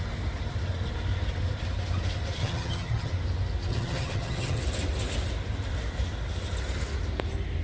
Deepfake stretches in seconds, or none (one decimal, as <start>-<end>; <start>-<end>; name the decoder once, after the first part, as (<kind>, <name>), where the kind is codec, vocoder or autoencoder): 2.4-3.1 (vocoder, HiFi-GAN); 3.7-4.6